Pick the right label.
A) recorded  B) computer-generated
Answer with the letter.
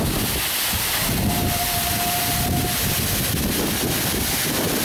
A